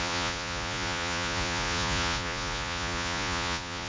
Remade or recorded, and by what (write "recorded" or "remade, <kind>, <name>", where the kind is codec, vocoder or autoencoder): remade, vocoder, Vocos